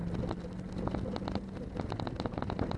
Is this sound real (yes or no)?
yes